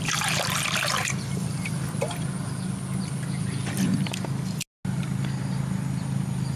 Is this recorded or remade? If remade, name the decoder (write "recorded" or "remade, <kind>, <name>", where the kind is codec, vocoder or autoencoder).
recorded